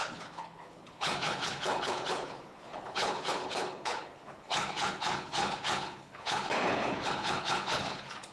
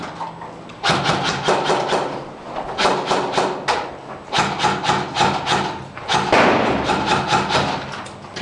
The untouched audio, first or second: second